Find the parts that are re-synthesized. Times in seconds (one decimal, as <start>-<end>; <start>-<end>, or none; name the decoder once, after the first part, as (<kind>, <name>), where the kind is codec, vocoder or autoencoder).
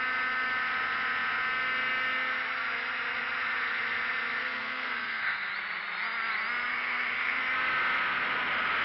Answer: 4.4-5.5 (codec, SNAC); 6.7-7.4